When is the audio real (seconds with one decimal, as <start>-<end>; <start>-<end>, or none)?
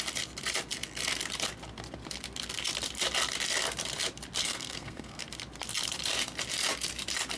0.0-4.4; 5.2-7.4